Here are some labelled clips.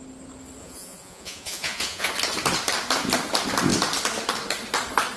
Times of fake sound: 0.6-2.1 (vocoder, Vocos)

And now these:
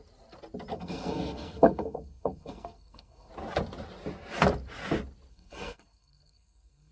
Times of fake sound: 0.7-3.3 (codec, SNAC); 5.3-6.9

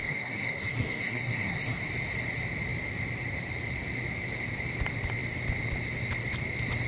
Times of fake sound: 0.0-1.8 (codec, SNAC)

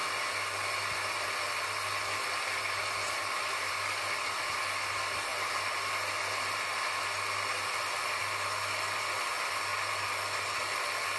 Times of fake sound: none